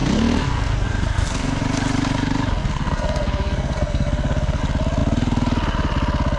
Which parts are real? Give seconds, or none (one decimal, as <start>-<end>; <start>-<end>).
1.6-2.6; 4.6-6.4